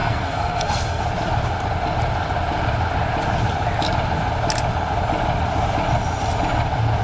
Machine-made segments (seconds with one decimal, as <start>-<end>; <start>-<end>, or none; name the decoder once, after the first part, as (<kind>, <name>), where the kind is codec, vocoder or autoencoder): 0.0-1.0 (codec, SNAC)

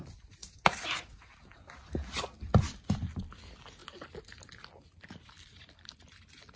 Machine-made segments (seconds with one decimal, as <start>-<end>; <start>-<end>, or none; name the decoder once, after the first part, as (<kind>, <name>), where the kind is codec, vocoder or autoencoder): none

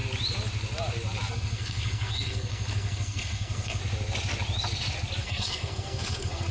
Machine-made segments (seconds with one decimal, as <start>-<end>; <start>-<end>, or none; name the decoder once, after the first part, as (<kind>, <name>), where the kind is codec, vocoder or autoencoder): 1.3-3.8 (codec, SNAC); 5.2-6.5

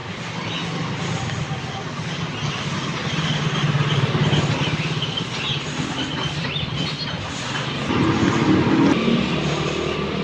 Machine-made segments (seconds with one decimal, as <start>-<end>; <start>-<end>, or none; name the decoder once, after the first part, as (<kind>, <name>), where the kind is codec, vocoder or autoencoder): none

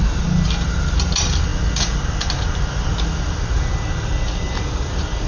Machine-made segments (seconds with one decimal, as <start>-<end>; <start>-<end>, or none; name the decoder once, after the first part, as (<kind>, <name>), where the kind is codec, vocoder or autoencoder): none

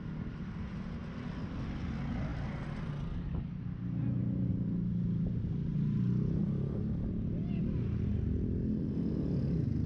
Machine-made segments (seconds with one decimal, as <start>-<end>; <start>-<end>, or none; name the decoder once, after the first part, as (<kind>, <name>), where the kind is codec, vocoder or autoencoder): none

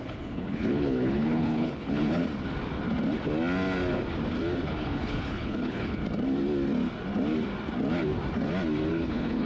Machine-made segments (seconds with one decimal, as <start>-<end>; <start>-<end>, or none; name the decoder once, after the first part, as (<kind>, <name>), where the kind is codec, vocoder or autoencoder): 0.0-2.2 (codec, HILCodec); 4.8-6.0; 8.9-9.5

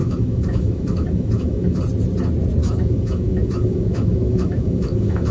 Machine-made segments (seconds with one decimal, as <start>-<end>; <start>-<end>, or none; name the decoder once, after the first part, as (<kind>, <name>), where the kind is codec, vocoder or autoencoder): 0.0-1.8 (autoencoder, DAC-VAE); 2.6-5.3